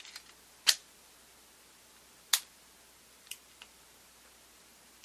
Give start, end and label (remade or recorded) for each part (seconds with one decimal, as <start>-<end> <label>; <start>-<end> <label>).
0.0-5.0 recorded